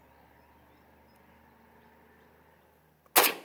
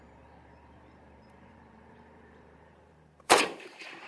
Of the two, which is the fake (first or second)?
second